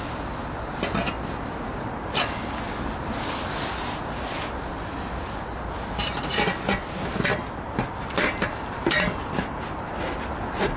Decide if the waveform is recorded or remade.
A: recorded